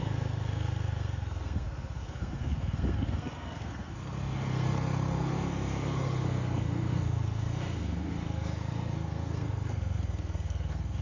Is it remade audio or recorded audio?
remade